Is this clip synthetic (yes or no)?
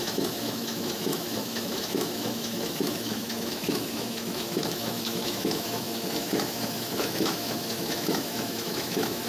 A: yes